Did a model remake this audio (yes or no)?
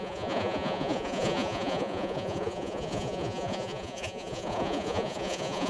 yes